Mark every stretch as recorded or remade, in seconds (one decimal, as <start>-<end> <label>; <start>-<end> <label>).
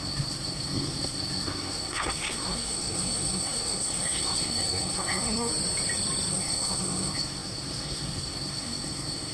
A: 0.0-5.5 remade; 5.5-6.3 recorded; 6.3-9.3 remade